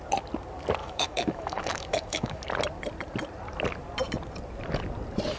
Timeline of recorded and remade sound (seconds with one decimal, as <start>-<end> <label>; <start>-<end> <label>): 0.0-0.8 recorded; 0.8-2.4 remade; 2.4-5.4 recorded